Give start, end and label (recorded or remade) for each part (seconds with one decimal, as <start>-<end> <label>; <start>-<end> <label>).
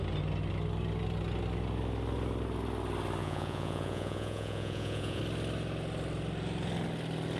0.0-3.2 recorded; 3.2-5.2 remade; 5.2-7.4 recorded